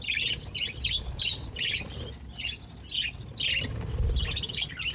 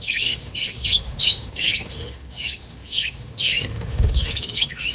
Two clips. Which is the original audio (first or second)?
first